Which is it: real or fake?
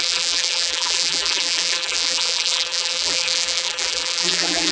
fake